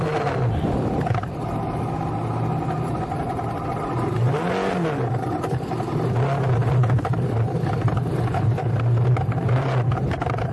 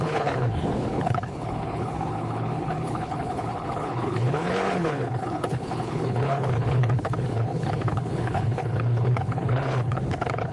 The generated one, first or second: second